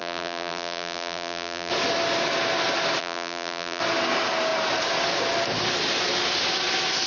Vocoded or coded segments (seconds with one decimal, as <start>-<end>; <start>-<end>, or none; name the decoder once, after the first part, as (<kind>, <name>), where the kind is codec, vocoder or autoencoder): 0.0-1.7 (vocoder, BigVGAN v2); 3.0-3.8